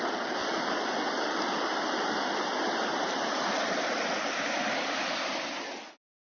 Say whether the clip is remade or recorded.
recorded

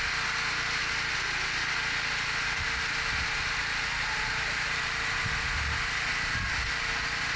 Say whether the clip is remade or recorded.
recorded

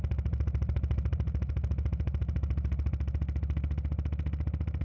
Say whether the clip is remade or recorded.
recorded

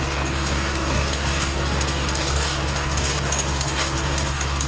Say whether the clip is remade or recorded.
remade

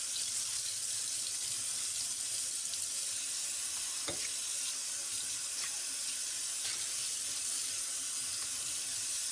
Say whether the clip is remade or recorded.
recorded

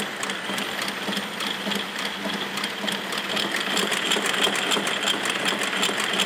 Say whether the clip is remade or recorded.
recorded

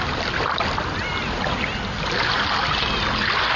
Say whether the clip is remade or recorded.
recorded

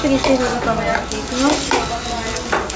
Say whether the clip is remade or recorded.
recorded